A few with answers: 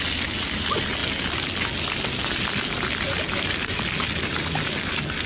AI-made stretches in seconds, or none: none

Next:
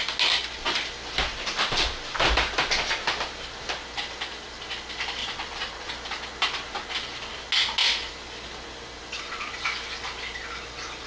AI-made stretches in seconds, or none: 5.2-5.9 (vocoder, Vocos)

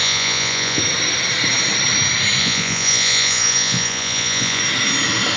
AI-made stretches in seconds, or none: 0.0-0.8 (vocoder, Vocos); 2.4-4.6